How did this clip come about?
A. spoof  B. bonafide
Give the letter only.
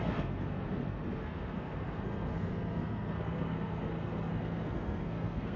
A